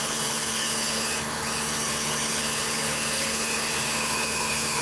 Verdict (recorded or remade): remade